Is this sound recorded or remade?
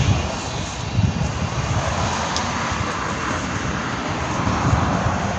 recorded